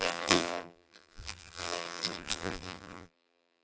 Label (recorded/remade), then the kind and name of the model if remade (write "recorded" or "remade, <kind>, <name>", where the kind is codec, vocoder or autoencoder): remade, vocoder, BigVGAN v2